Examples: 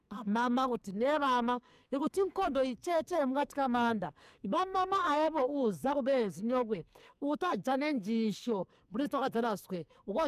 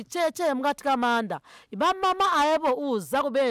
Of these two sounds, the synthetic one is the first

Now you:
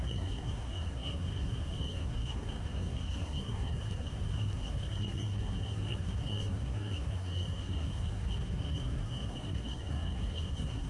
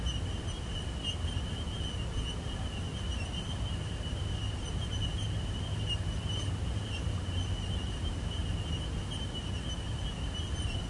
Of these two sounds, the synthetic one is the first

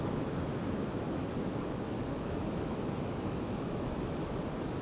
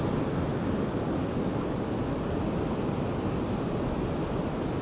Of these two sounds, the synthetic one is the first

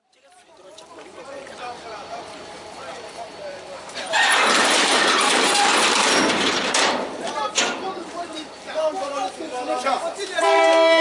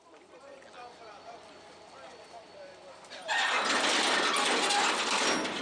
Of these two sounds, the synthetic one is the first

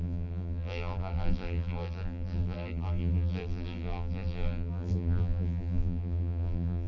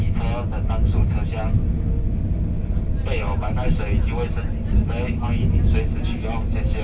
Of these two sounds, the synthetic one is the first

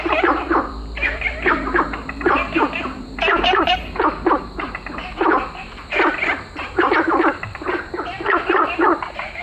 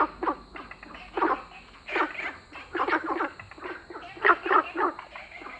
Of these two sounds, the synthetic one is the first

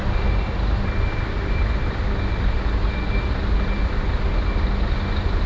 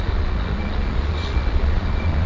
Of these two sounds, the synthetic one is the second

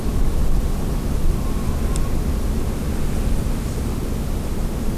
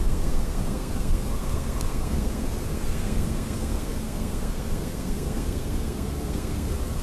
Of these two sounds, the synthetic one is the second